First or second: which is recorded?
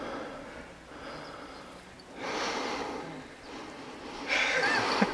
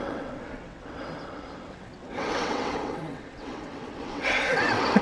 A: first